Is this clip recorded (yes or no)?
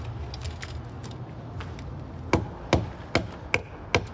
yes